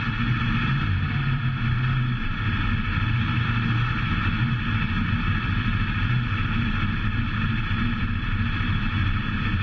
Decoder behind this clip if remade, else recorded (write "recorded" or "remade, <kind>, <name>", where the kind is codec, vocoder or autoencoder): remade, vocoder, BigVGAN v2